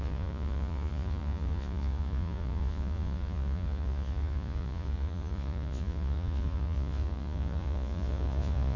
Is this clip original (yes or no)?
no